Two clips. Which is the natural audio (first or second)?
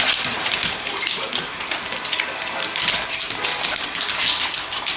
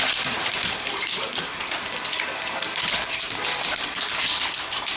first